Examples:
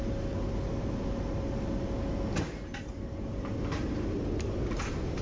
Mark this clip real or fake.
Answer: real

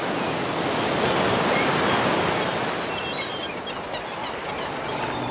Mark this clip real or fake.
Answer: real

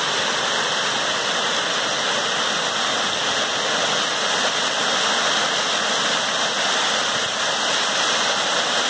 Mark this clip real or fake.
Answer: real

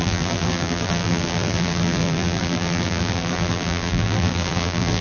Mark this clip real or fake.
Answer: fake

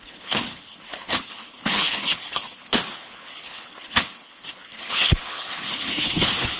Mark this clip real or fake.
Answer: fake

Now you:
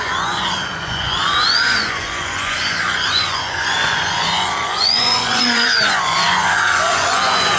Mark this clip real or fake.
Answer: fake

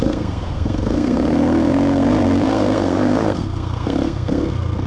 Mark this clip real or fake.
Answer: fake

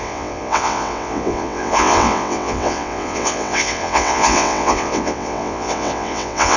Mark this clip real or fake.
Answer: fake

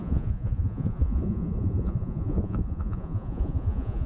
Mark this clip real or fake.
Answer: fake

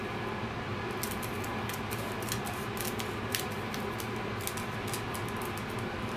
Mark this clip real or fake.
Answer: real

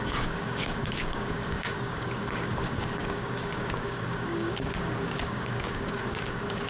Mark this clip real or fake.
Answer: fake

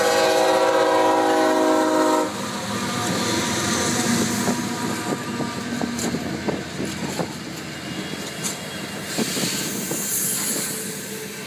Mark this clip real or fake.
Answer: real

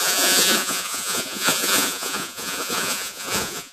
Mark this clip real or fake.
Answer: fake